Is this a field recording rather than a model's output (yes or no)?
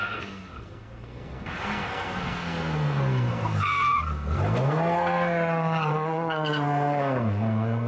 no